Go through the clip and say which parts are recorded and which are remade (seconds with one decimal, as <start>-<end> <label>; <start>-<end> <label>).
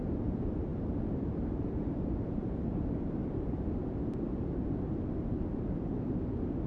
0.0-0.7 recorded; 0.7-2.5 remade; 2.5-6.7 recorded